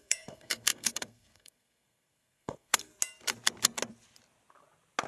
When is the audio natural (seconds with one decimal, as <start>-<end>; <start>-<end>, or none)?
2.9-5.1